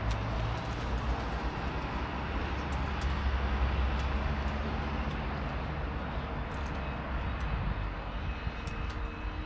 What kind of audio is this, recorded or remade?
recorded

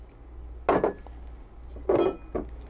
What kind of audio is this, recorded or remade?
recorded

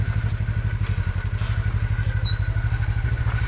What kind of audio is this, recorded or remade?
recorded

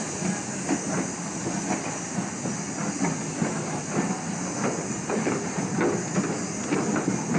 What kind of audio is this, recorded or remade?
recorded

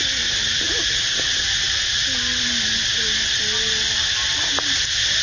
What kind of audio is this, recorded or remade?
recorded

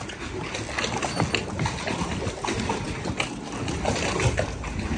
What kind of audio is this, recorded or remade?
recorded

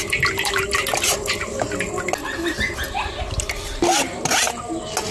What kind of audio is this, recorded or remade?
recorded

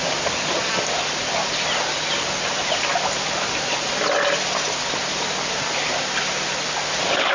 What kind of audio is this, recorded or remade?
recorded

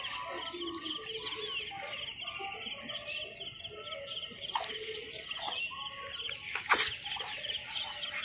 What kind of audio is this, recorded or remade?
recorded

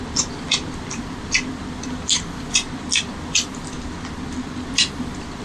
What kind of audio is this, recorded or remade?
remade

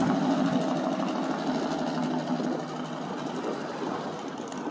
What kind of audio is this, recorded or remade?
recorded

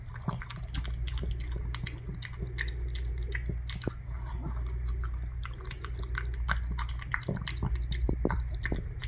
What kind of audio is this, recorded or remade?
recorded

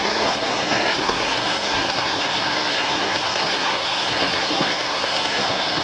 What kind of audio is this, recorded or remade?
remade